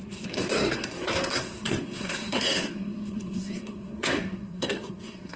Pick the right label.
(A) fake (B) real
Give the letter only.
A